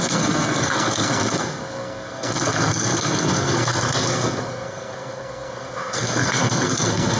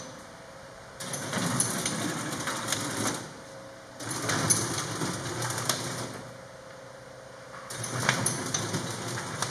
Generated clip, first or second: first